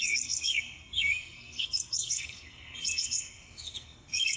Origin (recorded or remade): remade